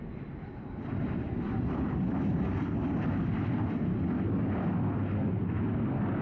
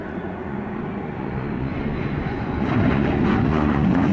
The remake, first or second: second